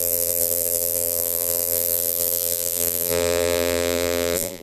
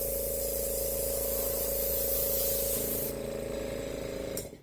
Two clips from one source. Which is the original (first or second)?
second